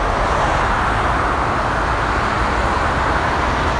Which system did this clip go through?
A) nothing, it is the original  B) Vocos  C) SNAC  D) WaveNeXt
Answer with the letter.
A